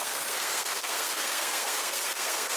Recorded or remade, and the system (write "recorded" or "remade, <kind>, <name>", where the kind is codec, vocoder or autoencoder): remade, codec, SNAC